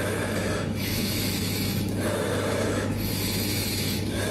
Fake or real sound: fake